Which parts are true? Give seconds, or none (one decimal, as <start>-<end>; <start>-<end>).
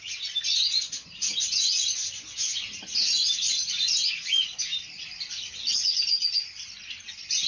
0.0-7.5